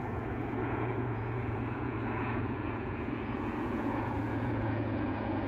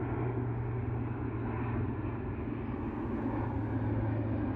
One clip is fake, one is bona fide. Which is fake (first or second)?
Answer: first